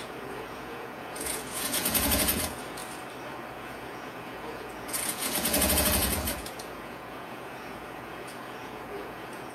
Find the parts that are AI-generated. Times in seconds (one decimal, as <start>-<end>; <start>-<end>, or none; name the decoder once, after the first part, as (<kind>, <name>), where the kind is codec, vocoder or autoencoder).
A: 0.0-2.8 (vocoder, Vocos); 3.5-9.5